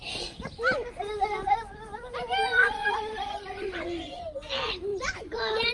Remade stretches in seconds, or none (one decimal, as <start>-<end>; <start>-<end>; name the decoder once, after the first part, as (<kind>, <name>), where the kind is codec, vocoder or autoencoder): 2.5-4.2 (vocoder, Vocos); 4.9-5.7